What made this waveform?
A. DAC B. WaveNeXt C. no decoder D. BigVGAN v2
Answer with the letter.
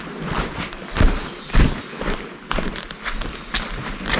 C